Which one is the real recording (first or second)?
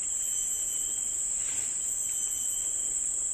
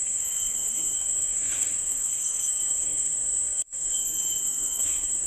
first